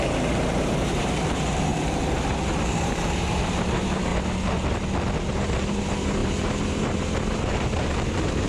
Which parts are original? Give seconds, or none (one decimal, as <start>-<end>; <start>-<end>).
4.1-5.4